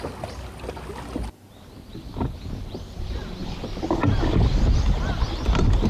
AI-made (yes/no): no